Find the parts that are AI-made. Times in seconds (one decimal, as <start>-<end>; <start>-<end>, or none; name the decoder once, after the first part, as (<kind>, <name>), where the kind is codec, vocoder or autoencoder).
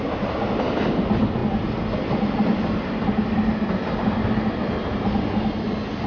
none